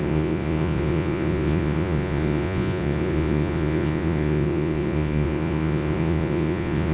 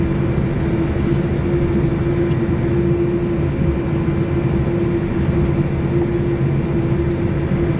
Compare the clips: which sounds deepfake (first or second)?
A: first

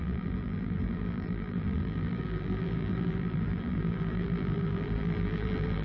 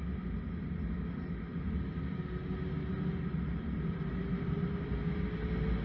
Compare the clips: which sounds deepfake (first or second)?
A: first